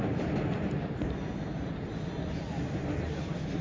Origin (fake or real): real